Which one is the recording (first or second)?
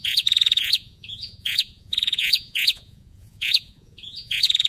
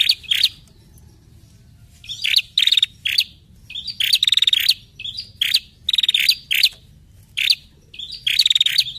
second